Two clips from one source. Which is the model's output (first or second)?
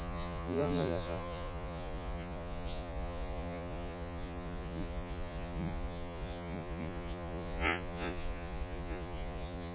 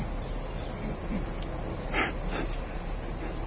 first